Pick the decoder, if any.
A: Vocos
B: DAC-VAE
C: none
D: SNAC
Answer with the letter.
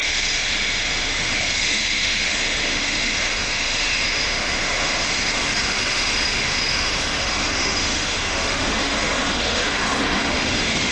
B